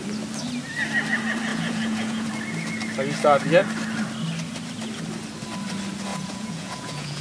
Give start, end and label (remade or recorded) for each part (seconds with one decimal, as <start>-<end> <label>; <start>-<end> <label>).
0.0-1.5 recorded; 1.5-2.3 remade; 2.3-6.1 recorded; 6.1-7.2 remade